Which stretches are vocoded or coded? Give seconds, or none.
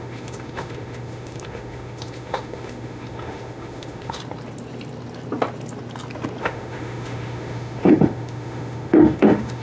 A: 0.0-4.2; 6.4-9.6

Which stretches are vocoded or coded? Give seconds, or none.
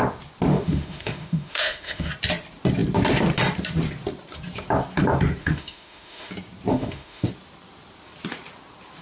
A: 0.5-2.1; 5.4-6.3; 6.7-7.3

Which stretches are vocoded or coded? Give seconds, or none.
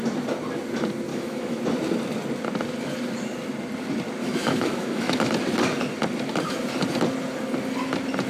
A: 1.1-1.6; 4.2-5.3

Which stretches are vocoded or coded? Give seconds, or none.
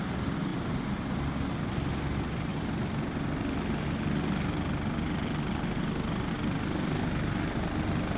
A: none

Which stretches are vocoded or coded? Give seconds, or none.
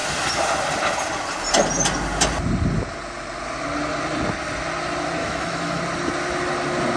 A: 5.2-5.8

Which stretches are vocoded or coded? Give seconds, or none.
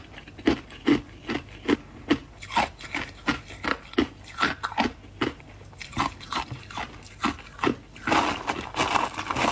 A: none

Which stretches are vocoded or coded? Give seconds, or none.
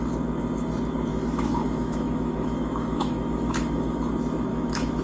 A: 1.1-4.1; 4.5-5.0